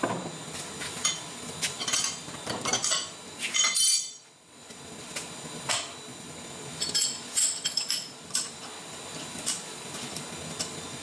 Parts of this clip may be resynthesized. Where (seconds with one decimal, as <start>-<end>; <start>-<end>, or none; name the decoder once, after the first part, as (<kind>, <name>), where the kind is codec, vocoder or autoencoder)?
none